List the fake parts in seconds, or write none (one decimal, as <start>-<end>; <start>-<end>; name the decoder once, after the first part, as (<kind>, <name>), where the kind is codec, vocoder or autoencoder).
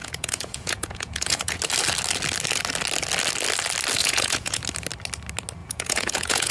0.0-1.6 (vocoder, Vocos); 4.0-4.6; 5.6-6.5